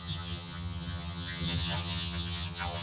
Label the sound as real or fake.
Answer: fake